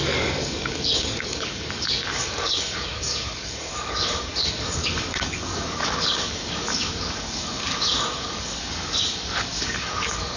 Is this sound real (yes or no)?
no